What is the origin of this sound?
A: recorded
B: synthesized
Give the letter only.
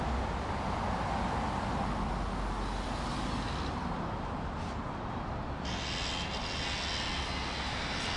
A